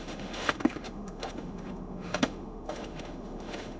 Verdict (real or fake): fake